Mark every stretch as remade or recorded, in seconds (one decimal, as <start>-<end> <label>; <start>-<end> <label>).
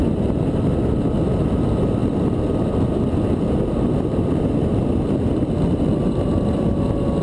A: 0.0-7.2 recorded